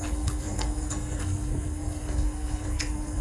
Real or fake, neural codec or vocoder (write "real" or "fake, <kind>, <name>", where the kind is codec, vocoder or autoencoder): fake, codec, SNAC